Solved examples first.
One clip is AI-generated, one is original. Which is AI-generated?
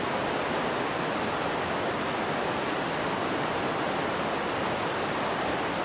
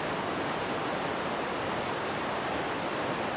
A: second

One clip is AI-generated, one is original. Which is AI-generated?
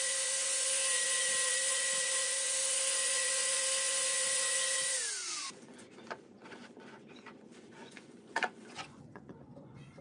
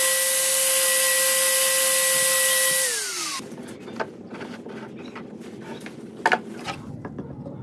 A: first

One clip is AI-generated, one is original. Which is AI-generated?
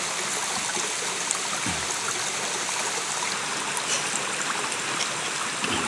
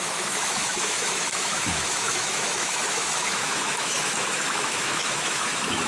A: second